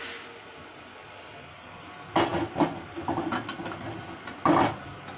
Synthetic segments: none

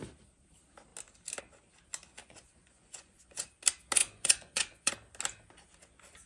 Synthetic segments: 2.2-3.5; 4.0-4.9

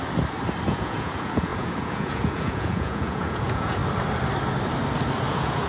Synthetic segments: 0.7-3.8; 5.3-5.7

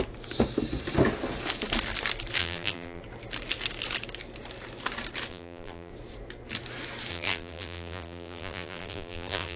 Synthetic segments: 2.4-3.0; 5.3-5.9; 7.1-9.6

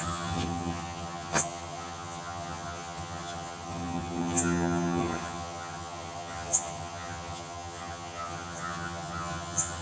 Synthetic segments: 0.0-9.8

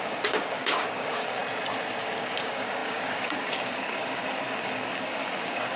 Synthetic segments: 0.0-1.4; 2.0-5.8

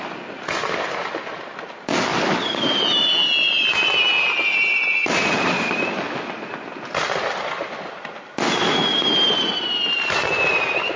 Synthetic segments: none

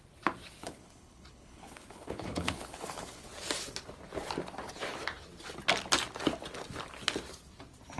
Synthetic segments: 0.6-3.3